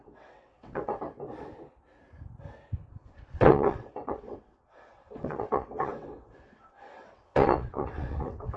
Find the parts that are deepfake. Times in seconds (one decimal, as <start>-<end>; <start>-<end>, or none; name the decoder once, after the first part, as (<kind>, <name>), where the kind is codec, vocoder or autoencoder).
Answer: 0.0-0.9 (vocoder, WaveNeXt); 2.9-8.6